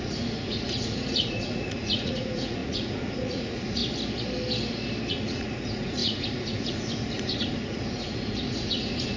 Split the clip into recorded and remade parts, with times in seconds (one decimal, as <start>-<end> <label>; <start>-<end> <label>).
0.0-3.8 remade; 3.8-5.1 recorded; 5.1-9.2 remade